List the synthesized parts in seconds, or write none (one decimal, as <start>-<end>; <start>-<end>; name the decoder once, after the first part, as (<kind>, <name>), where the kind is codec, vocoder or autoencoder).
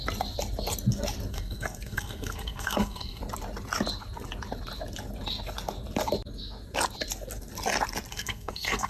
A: 1.3-3.2 (codec, SNAC); 8.1-8.9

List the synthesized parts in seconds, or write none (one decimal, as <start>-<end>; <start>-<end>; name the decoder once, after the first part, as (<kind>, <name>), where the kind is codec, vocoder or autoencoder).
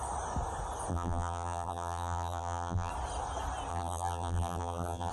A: 0.9-2.9 (vocoder, BigVGAN v2); 3.7-5.1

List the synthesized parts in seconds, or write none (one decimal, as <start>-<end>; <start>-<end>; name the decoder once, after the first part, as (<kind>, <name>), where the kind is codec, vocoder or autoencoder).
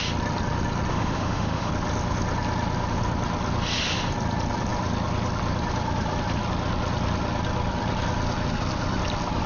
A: 0.9-1.7 (autoencoder, DAC-VAE)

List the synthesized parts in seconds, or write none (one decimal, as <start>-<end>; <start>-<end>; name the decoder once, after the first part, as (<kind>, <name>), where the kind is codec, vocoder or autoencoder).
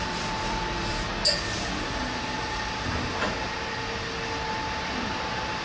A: 0.0-1.1 (vocoder, BigVGAN v2); 4.5-5.6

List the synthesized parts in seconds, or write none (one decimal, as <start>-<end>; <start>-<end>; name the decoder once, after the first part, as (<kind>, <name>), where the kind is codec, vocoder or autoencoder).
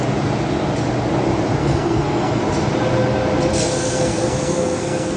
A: 1.6-2.4 (codec, SNAC); 3.5-5.2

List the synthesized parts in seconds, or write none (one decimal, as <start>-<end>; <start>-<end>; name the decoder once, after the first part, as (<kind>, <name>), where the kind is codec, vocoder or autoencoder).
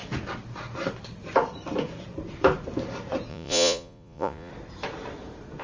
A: 3.3-4.5 (vocoder, Vocos)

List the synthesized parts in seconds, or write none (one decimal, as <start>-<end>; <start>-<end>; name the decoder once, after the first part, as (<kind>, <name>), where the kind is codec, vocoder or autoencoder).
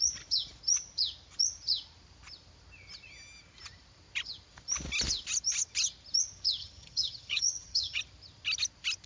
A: 6.6-8.0 (vocoder, HiFi-GAN)